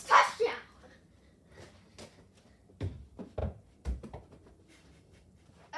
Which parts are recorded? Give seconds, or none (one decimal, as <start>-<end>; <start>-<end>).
0.0-3.4

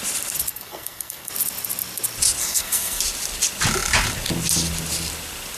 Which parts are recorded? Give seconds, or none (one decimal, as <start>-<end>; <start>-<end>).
0.0-0.5; 1.3-2.4; 3.0-5.6

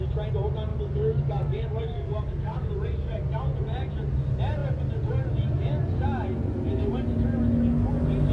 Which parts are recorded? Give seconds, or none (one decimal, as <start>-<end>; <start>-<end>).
0.0-0.7; 2.7-8.3

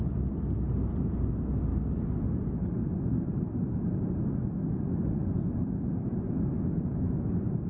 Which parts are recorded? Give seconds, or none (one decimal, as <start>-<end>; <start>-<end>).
0.0-7.7

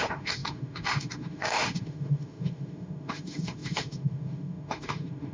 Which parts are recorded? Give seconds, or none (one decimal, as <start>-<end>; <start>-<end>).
none

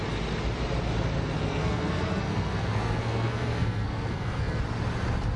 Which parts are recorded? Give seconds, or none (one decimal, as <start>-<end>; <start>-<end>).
0.0-1.4; 4.6-5.4